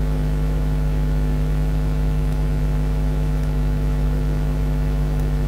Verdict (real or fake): fake